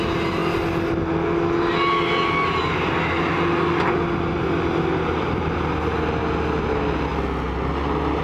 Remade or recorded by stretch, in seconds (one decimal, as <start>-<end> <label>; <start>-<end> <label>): 0.0-8.2 recorded